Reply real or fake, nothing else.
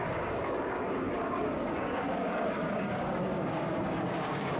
fake